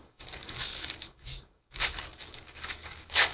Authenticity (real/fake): fake